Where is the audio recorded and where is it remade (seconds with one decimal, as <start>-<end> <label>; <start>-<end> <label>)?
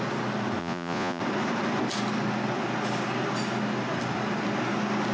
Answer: 0.0-0.6 recorded; 0.6-1.2 remade; 1.2-5.1 recorded